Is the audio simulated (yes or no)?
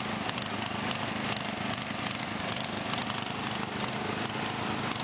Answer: no